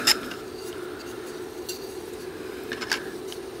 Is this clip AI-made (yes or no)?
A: no